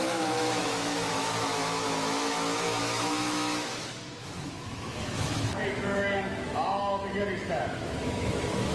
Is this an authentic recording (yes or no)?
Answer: no